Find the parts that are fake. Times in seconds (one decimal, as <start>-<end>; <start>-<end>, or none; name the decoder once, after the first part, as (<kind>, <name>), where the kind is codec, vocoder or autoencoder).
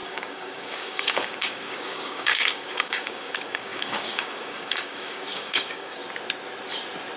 0.0-6.0 (codec, DAC)